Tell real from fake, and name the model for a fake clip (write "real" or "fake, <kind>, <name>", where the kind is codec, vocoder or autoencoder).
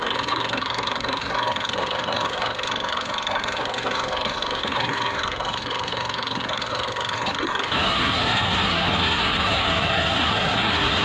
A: fake, codec, SNAC